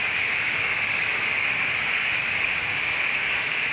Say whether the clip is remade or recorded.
remade